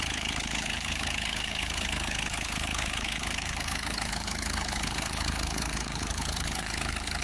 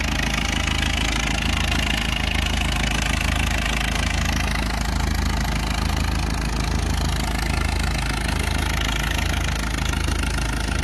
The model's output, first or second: first